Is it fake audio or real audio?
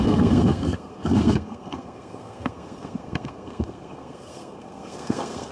fake